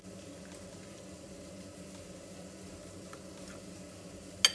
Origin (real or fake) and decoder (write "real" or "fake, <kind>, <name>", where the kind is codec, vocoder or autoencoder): real